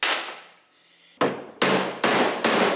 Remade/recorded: recorded